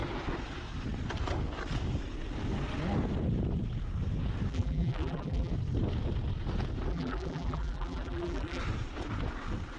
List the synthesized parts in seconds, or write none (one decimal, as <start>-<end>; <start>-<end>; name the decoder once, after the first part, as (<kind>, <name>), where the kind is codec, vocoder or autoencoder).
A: 4.5-5.5 (vocoder, BigVGAN v2); 6.9-8.6